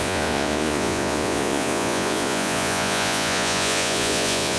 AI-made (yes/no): yes